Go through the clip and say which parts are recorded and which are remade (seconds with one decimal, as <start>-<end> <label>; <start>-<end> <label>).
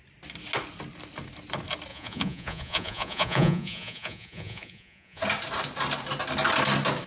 0.0-1.9 recorded; 1.9-5.2 remade; 5.2-7.1 recorded